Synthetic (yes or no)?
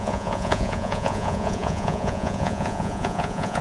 yes